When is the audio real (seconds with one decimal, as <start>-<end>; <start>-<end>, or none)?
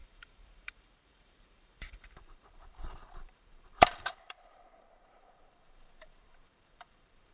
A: none